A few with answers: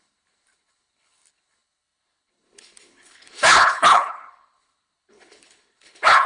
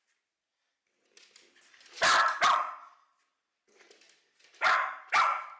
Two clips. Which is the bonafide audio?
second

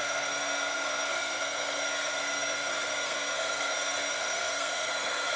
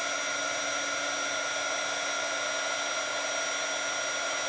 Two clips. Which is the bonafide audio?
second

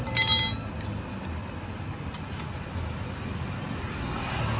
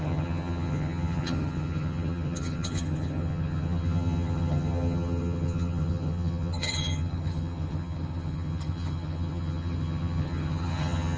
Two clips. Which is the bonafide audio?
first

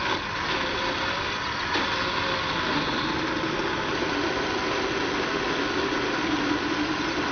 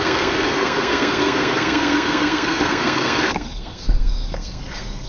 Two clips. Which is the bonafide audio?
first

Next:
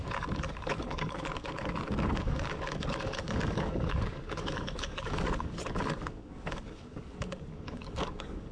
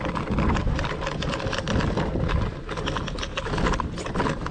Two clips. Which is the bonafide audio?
second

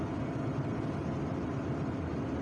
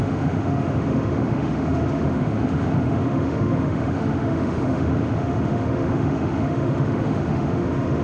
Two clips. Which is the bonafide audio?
first